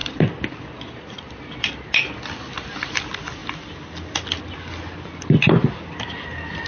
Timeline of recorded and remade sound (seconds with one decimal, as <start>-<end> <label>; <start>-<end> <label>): 0.0-6.7 recorded